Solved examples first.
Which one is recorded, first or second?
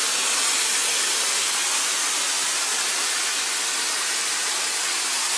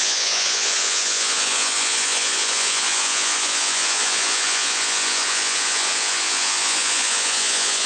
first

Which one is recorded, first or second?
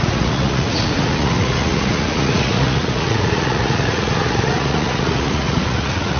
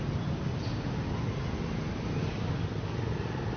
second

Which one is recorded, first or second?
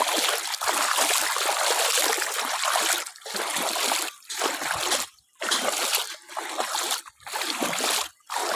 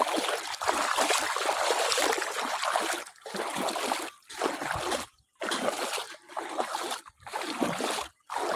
first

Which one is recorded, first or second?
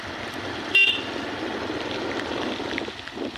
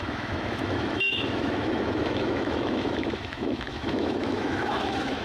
first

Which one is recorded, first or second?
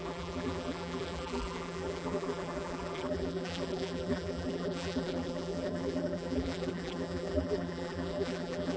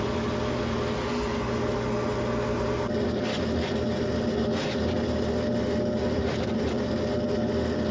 second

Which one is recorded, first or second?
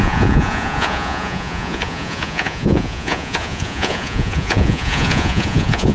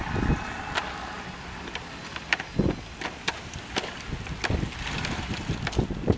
second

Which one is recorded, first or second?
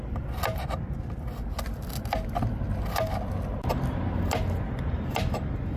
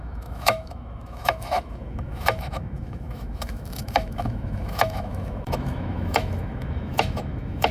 first